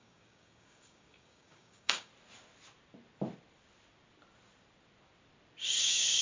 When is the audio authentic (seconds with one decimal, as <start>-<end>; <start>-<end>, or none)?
2.1-5.8